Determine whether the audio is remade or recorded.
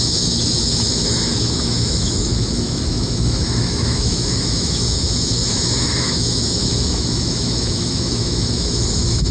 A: remade